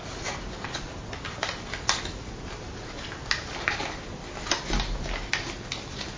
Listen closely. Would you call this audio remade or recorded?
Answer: recorded